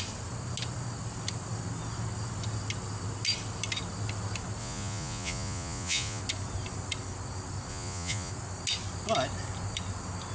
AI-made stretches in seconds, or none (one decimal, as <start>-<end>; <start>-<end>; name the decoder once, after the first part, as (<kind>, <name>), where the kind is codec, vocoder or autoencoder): 4.6-6.2 (vocoder, Vocos); 7.7-8.3